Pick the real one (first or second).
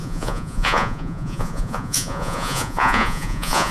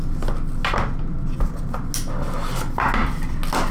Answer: second